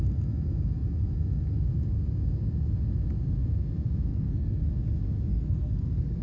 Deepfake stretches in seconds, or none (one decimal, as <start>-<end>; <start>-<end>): 4.1-4.7; 5.3-6.2